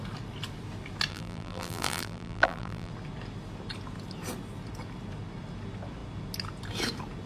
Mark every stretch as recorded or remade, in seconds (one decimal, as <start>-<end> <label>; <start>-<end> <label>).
0.0-1.1 recorded; 1.1-2.9 remade; 2.9-7.3 recorded